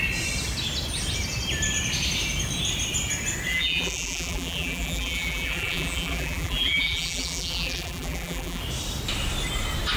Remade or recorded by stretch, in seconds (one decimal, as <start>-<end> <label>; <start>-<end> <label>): 0.0-3.5 recorded; 3.5-8.6 remade; 8.6-10.0 recorded